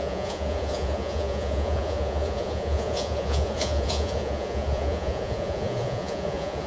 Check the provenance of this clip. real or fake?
fake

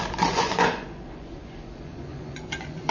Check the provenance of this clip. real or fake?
fake